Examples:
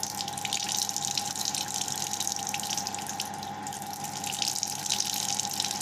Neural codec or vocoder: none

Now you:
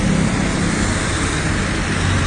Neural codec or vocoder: vocoder, BigVGAN v2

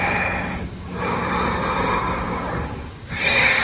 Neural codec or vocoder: codec, DAC